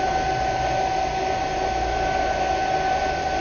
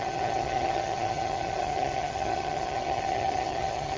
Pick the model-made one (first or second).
second